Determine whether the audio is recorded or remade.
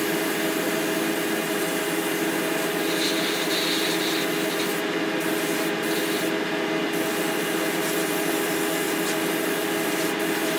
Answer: recorded